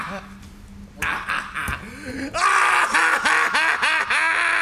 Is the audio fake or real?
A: real